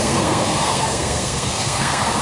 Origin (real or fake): fake